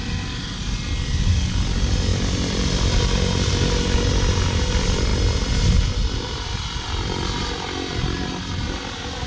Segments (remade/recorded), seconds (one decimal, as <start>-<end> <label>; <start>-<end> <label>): 0.0-2.1 recorded; 2.1-3.0 remade; 3.0-9.3 recorded